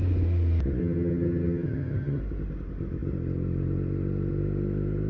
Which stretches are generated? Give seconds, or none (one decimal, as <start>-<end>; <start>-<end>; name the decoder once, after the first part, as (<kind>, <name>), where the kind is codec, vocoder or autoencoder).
0.8-2.2 (vocoder, HiFi-GAN)